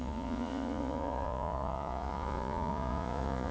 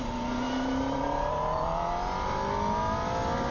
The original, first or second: second